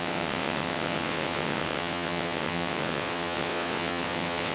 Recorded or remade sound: remade